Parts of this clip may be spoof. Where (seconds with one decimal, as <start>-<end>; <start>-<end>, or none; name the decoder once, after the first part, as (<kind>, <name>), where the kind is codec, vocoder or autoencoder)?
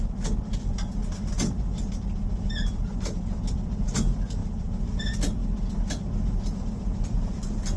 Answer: 0.0-1.0 (vocoder, BigVGAN v2); 2.3-5.4; 6.6-7.8